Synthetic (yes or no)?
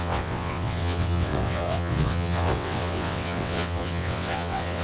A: yes